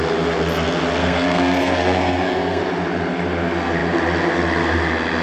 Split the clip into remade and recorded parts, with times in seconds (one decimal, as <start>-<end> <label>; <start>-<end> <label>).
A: 0.0-1.0 recorded; 1.0-2.6 remade; 2.6-5.2 recorded